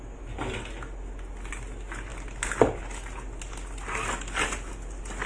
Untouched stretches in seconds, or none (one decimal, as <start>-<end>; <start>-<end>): 0.0-5.3